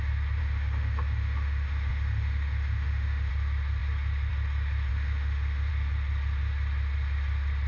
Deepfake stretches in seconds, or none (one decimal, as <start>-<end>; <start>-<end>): 0.4-3.3; 4.9-5.7